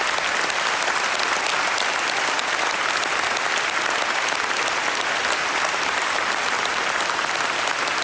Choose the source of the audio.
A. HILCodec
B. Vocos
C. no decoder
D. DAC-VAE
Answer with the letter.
C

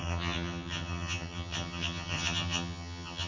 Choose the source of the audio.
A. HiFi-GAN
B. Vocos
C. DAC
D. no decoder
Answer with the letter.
A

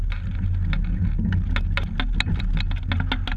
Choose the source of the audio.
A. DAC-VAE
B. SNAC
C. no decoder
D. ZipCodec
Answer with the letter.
C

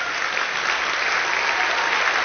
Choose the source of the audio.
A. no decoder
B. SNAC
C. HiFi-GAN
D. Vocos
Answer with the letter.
A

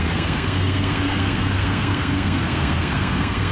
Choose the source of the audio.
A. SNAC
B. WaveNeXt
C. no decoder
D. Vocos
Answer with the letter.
A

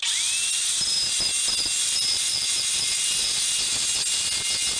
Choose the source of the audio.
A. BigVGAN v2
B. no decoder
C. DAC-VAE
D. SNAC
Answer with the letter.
B